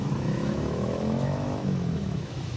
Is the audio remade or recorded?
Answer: remade